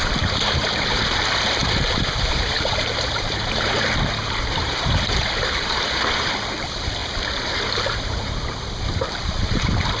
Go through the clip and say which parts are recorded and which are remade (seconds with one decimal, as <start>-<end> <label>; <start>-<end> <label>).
0.0-10.0 remade

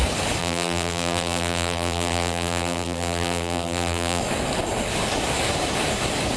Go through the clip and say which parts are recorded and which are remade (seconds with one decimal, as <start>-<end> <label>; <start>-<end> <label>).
0.0-0.4 recorded; 0.4-4.2 remade; 4.2-6.4 recorded

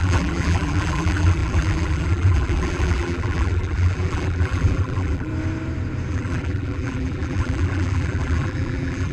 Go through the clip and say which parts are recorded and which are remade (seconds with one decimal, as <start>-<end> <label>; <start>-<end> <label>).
0.0-5.3 remade; 5.3-6.1 recorded; 6.1-9.1 remade

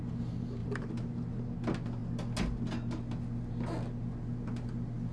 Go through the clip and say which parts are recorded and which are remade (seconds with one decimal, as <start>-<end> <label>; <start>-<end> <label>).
0.0-0.6 recorded; 0.6-1.4 remade; 1.4-5.1 recorded

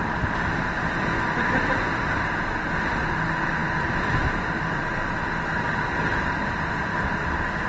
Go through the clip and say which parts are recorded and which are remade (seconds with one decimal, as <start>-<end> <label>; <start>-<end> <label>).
0.0-7.7 recorded

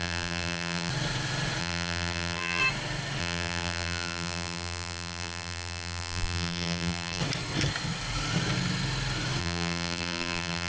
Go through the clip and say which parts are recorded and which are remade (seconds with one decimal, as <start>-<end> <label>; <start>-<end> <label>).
0.0-0.9 remade; 0.9-1.6 recorded; 1.6-2.6 remade; 2.6-3.2 recorded; 3.2-7.2 remade; 7.2-9.4 recorded; 9.4-10.7 remade

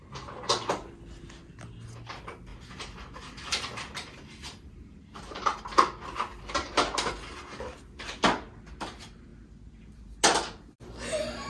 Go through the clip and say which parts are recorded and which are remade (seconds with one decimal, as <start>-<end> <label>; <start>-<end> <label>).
0.0-2.5 recorded; 2.5-5.6 remade; 5.6-11.5 recorded